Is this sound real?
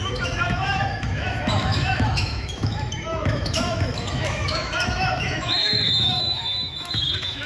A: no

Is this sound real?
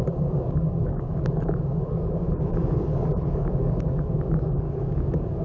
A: no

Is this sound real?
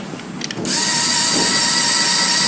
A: yes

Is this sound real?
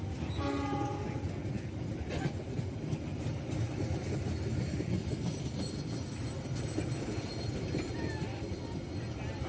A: yes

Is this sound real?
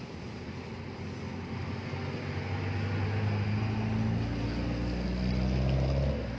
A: yes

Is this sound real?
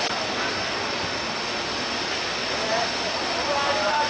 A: yes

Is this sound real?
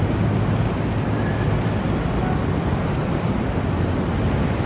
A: yes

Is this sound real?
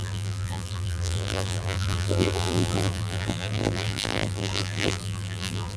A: no